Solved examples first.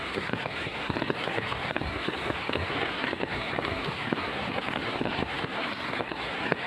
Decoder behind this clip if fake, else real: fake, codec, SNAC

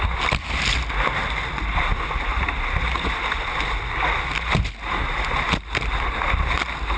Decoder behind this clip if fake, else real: real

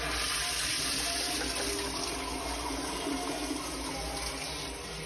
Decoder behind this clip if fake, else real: real